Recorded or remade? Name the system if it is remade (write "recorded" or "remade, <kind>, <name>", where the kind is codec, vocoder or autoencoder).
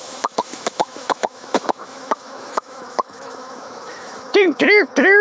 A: remade, autoencoder, DAC-VAE